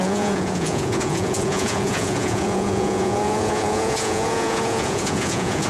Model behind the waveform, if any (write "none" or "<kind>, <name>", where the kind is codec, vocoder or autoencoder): vocoder, Vocos